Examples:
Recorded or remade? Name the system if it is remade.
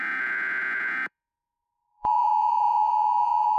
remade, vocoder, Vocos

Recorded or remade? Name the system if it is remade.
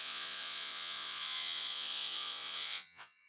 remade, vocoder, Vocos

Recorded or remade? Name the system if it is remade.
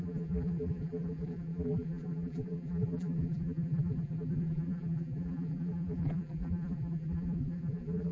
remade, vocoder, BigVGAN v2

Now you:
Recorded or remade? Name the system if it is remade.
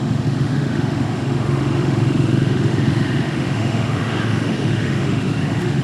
remade, autoencoder, DAC-VAE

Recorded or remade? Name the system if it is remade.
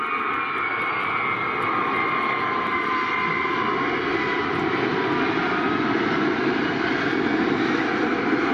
recorded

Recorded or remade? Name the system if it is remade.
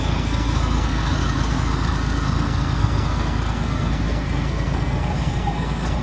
remade, codec, SNAC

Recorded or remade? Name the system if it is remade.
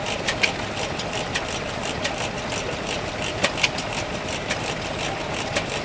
recorded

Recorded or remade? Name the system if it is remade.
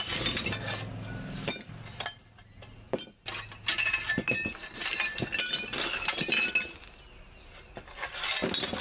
recorded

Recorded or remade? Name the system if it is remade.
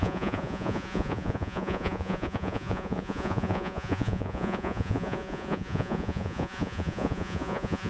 remade, vocoder, Vocos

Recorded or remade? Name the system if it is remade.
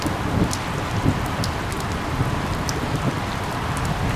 recorded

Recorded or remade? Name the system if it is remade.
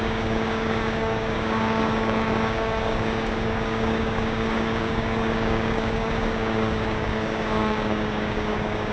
remade, codec, DAC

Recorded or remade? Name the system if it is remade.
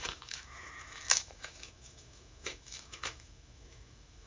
remade, autoencoder, DAC-VAE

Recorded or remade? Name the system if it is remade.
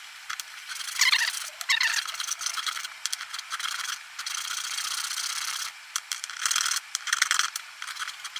remade, vocoder, BigVGAN v2